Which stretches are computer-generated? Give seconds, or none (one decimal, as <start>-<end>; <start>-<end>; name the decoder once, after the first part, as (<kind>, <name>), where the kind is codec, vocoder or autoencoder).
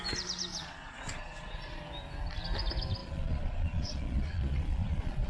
0.5-1.8 (vocoder, Vocos); 3.0-5.3